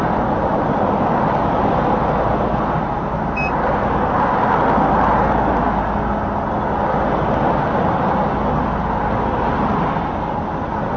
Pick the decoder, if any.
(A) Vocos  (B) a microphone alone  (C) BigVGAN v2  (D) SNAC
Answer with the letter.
B